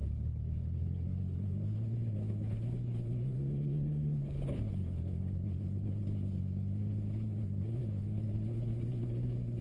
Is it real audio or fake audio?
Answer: fake